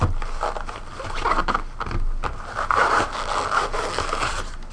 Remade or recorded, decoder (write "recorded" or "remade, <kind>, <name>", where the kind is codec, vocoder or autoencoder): recorded